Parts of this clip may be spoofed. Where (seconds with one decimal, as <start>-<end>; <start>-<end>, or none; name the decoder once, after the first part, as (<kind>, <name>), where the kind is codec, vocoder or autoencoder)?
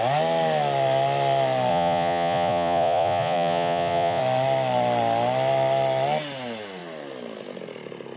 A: 1.7-4.2 (vocoder, Vocos)